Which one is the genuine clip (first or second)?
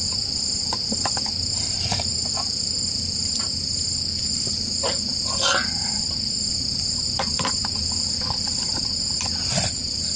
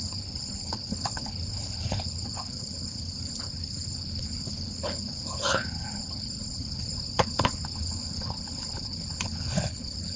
first